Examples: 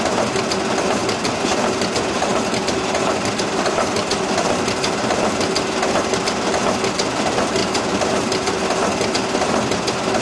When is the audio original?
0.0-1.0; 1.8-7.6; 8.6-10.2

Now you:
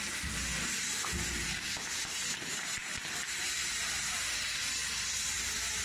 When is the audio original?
0.0-5.8

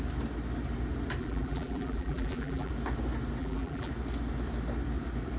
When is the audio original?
0.0-1.2; 2.7-3.4; 3.9-5.4

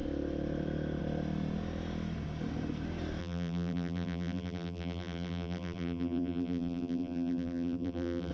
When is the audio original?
0.0-3.2